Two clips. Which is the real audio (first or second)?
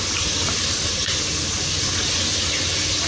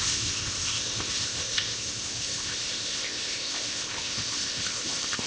first